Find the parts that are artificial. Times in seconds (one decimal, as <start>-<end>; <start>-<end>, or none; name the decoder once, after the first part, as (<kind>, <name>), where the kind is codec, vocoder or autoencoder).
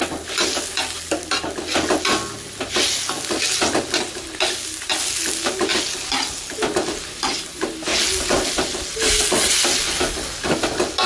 none